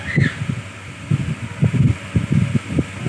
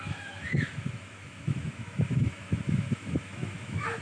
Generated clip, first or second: second